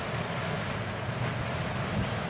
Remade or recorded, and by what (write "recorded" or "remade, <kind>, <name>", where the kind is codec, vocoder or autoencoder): recorded